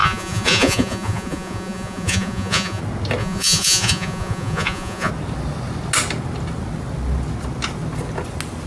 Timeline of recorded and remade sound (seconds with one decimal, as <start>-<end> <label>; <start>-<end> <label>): 0.0-2.8 remade; 2.8-3.2 recorded; 3.2-5.1 remade; 5.1-8.7 recorded

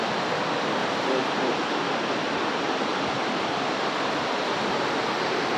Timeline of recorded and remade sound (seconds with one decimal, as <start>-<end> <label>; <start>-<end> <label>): 0.0-0.8 recorded; 0.8-1.5 remade; 1.5-5.6 recorded